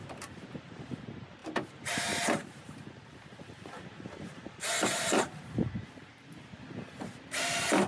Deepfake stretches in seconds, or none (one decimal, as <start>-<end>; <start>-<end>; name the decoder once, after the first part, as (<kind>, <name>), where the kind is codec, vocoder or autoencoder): 0.0-0.8 (vocoder, BigVGAN v2); 1.4-5.4